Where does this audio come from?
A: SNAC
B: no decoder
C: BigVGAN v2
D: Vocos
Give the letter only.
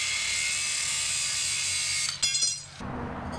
B